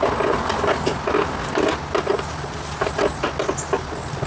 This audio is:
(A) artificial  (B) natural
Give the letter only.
B